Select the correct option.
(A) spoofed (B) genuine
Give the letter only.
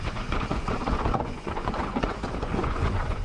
A